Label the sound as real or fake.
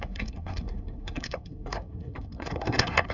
fake